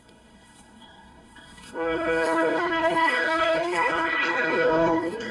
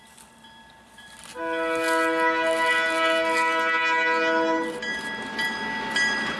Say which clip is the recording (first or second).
second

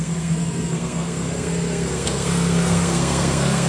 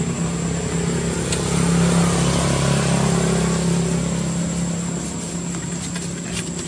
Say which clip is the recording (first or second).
second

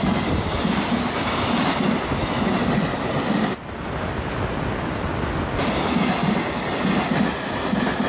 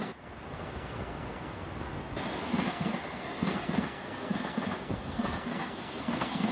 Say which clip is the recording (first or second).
first